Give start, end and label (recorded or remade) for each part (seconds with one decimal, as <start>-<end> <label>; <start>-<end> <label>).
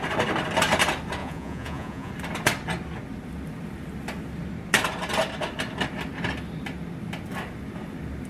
0.0-1.2 recorded; 1.2-2.1 remade; 2.1-8.3 recorded